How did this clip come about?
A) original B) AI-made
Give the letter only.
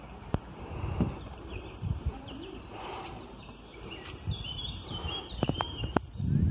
B